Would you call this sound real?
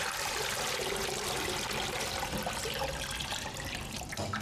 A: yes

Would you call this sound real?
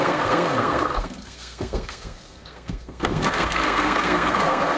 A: no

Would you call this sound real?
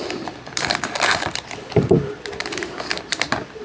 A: yes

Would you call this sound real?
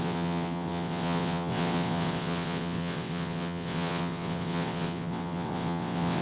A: no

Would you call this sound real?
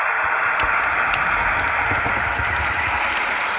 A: yes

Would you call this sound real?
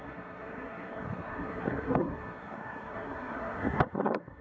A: no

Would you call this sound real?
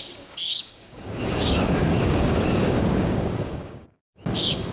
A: no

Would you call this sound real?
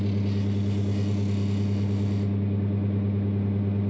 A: yes